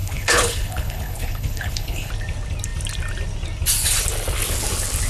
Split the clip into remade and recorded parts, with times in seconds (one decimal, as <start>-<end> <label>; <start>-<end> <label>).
0.0-2.1 remade; 2.1-5.1 recorded